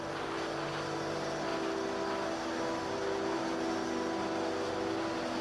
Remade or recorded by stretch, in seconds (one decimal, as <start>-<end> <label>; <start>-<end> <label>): 0.0-5.4 recorded